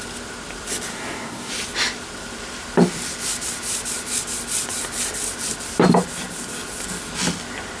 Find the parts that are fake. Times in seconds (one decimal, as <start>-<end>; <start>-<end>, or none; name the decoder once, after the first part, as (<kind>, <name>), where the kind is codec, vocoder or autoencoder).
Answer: 0.9-1.5 (codec, DAC)